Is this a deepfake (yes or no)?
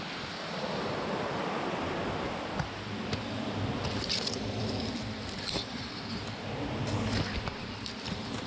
no